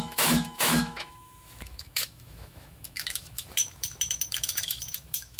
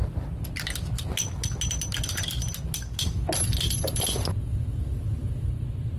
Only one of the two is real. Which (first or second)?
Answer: second